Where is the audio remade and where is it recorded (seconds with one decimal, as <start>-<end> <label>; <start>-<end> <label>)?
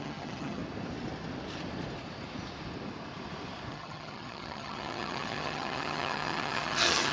0.0-0.6 remade; 0.6-3.7 recorded; 3.7-7.1 remade